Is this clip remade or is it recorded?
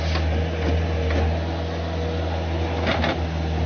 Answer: recorded